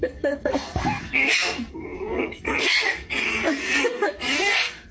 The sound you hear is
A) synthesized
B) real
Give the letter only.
A